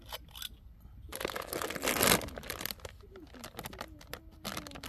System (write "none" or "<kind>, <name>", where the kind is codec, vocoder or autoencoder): none